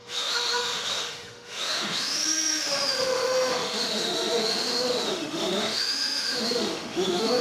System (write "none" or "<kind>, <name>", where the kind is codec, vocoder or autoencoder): autoencoder, DAC-VAE